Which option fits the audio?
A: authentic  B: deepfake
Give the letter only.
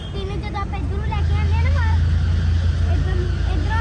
A